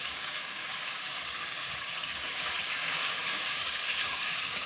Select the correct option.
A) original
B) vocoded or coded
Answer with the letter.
B